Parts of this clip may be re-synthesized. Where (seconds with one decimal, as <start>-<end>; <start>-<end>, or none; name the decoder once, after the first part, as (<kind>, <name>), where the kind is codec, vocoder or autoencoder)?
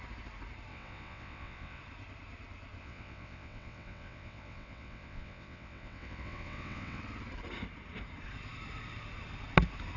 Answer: 0.7-1.8 (vocoder, WaveNeXt); 2.8-7.0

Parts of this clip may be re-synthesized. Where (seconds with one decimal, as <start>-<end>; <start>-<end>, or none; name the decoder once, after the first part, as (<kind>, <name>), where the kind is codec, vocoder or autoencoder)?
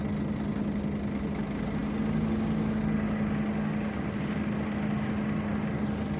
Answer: none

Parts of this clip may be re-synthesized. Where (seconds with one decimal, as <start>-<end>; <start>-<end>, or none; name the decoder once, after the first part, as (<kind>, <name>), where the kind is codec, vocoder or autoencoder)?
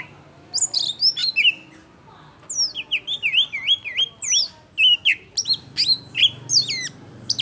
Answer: none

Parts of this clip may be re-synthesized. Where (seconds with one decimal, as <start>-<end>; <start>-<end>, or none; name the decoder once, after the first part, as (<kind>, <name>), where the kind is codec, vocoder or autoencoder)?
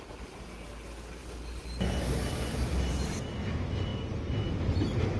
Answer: none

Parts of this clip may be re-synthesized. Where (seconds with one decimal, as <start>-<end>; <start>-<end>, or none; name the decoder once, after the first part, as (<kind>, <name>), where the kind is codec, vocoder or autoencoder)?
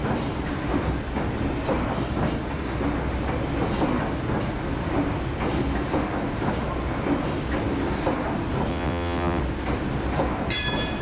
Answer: 8.7-9.4 (vocoder, WaveNeXt)